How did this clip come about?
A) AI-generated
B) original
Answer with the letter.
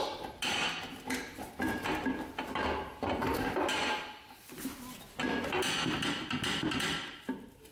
B